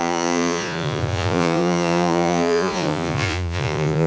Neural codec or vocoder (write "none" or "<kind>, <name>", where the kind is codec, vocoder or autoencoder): vocoder, Vocos